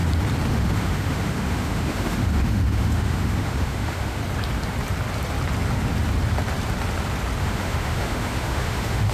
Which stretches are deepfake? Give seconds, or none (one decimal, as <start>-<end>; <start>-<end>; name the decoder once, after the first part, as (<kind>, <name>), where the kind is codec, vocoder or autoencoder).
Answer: 0.5-4.2 (autoencoder, DAC-VAE); 7.4-9.1